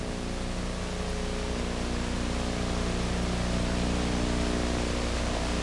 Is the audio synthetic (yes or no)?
no